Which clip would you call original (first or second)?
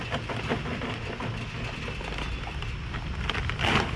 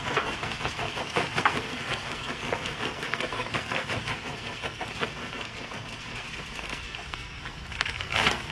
first